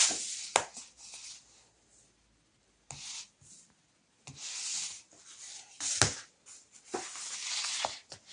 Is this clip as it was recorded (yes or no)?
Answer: yes